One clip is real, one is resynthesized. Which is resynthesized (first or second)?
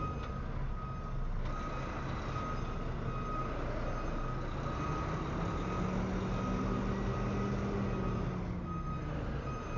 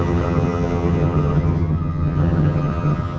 second